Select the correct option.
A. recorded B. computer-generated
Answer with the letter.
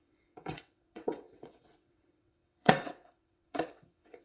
B